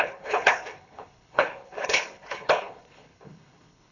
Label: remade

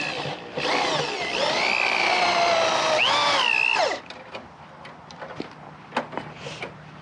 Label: recorded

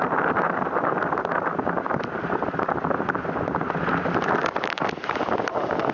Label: recorded